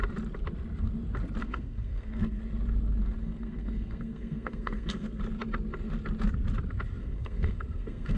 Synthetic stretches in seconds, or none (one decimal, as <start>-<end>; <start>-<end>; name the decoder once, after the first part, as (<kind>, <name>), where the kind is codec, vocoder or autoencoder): 1.4-2.4 (codec, SNAC); 3.2-5.2; 7.0-8.2